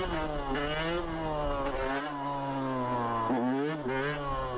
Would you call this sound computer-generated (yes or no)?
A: no